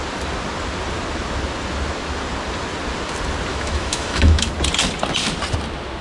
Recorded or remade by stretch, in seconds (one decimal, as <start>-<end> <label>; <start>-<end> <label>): 0.0-3.5 recorded; 3.5-4.5 remade; 4.5-6.0 recorded